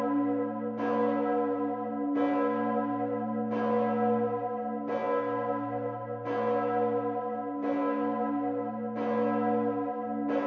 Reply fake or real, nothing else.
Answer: real